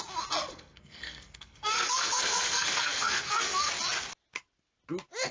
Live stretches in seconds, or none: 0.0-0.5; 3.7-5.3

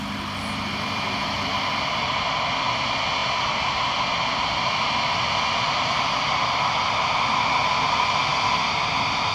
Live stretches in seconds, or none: 0.0-9.3

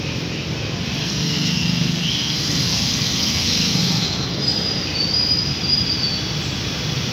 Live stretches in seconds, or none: 0.0-1.0; 4.4-7.1

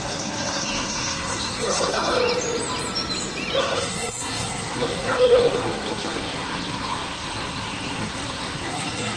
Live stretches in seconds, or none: 2.2-3.6

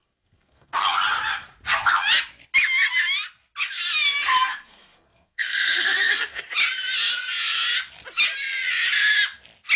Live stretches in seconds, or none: 0.8-4.5; 6.4-9.8

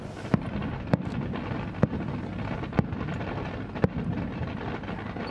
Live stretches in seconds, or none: 0.0-5.3